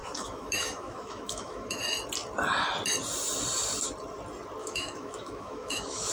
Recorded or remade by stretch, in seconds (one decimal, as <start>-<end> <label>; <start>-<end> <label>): 0.0-1.8 remade; 1.8-4.6 recorded; 4.6-6.1 remade